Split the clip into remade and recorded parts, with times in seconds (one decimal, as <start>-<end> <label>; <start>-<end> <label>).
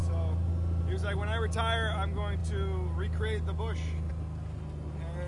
0.0-5.3 recorded